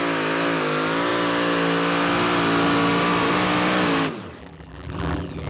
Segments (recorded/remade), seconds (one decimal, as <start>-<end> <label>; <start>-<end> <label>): 0.0-4.4 recorded; 4.4-5.5 remade